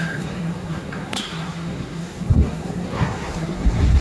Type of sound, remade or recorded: remade